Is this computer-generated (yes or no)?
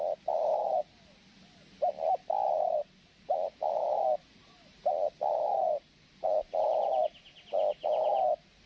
no